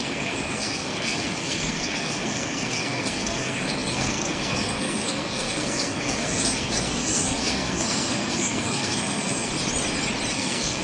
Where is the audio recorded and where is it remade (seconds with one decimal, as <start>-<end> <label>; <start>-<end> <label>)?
0.0-9.5 remade; 9.5-10.3 recorded; 10.3-10.8 remade